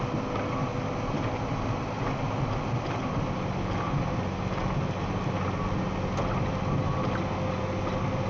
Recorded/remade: recorded